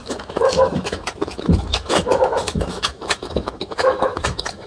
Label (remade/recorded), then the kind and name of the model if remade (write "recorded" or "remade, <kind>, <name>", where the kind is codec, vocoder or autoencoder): remade, autoencoder, DAC-VAE